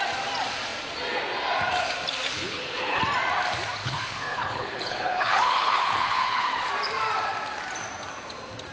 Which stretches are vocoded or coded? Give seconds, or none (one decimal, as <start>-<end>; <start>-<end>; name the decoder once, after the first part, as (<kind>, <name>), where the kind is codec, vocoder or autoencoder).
2.3-3.0 (codec, HILCodec); 3.8-6.7